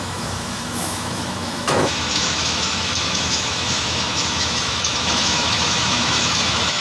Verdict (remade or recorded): remade